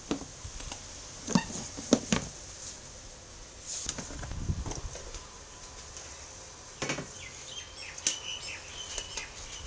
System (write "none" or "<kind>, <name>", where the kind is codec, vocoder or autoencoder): none